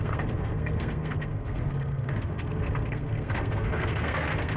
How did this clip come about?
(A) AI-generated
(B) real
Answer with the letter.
A